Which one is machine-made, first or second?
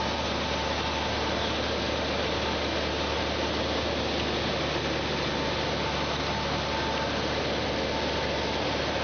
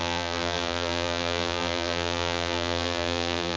second